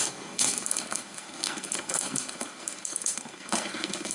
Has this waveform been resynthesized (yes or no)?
yes